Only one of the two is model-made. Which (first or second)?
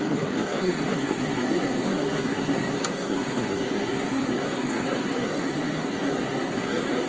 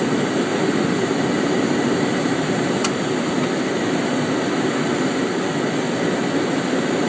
first